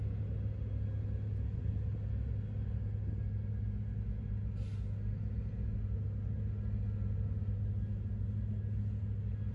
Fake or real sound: real